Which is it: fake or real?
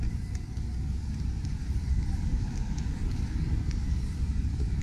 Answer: fake